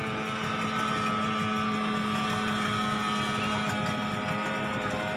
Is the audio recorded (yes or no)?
yes